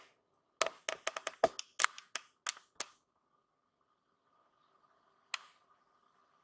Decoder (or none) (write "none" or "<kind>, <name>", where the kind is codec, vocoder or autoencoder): none